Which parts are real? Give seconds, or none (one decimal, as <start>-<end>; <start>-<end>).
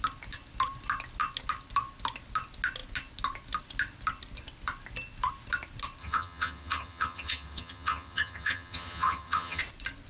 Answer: 0.0-6.0; 9.6-10.1